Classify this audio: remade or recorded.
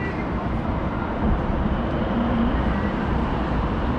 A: remade